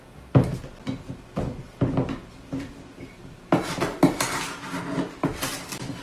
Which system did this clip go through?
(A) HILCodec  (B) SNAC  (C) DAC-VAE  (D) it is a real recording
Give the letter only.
D